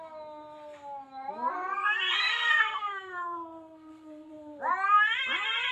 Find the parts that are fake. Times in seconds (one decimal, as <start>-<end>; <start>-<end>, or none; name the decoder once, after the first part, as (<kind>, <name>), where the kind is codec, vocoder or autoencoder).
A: 1.5-4.3 (codec, SNAC)